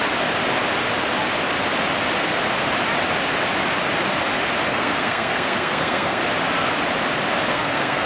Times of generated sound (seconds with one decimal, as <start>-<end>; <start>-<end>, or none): 4.7-6.2; 7.5-8.1